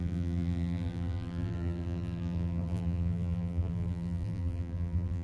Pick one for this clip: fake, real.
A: fake